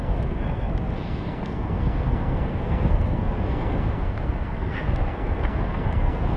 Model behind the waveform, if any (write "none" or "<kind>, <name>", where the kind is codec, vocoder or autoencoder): codec, SNAC